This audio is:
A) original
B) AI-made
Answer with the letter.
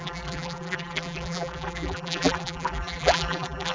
B